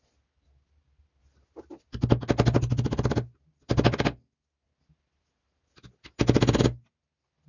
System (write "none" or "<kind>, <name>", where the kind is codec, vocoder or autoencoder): none